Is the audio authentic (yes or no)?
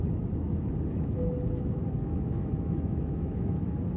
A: no